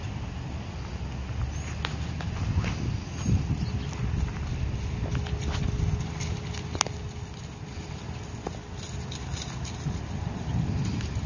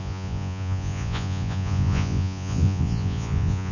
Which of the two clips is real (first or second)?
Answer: first